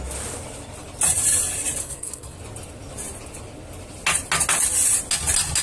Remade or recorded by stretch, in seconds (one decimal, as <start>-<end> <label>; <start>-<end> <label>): 0.0-1.8 recorded; 1.8-2.4 remade; 2.4-5.6 recorded